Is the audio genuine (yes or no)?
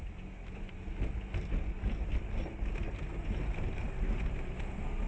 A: yes